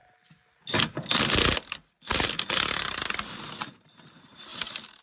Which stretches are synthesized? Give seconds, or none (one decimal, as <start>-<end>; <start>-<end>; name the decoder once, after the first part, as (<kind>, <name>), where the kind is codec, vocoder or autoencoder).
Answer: none